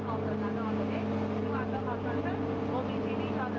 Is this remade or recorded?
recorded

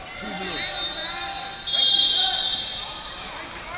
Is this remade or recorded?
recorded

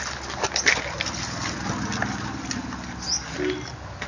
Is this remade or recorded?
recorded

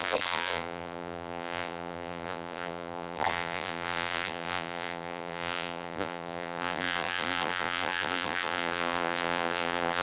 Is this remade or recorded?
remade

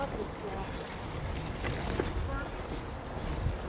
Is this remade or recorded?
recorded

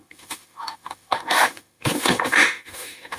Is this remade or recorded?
remade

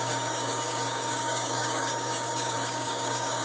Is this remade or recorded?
remade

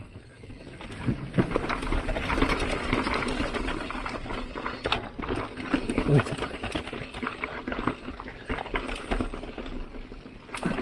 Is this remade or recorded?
recorded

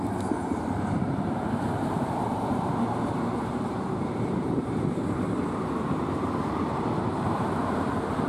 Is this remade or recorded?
remade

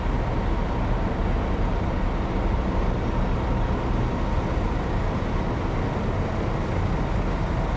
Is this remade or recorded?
recorded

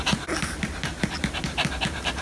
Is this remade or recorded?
recorded